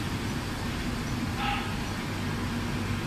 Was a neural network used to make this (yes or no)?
no